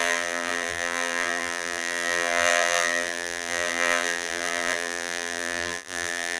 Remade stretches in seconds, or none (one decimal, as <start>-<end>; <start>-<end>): 0.0-6.4

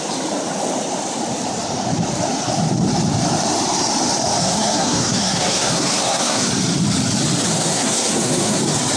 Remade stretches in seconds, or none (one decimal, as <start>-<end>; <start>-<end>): 4.4-6.5; 7.5-8.6

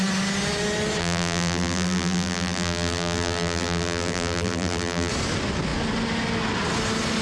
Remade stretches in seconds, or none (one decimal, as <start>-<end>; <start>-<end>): 1.0-5.1

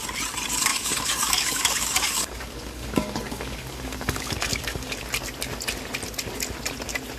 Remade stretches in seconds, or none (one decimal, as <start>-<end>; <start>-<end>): 0.7-5.0

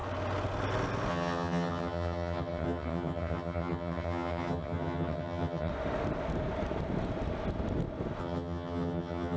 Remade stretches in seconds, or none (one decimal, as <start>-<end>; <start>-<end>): 1.1-5.7; 8.2-9.4

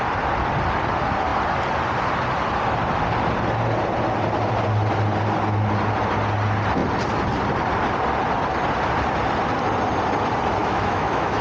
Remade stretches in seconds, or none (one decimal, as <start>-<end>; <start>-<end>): 10.6-11.4

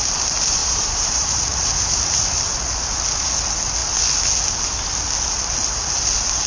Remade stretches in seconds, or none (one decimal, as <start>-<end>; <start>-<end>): 0.6-1.7